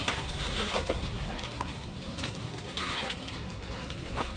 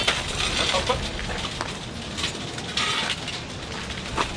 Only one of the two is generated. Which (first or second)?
first